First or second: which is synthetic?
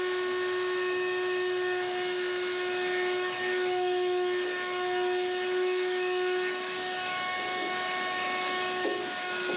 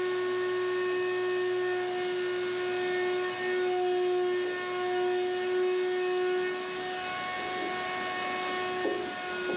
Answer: first